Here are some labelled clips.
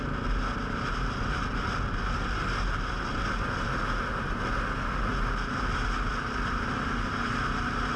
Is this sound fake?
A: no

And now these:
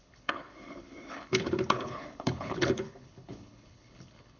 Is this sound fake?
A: yes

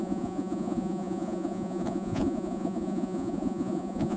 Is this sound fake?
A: yes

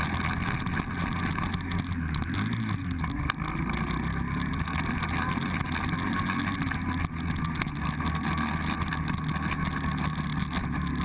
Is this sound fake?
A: no